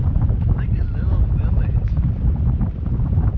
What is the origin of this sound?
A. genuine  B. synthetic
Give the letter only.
B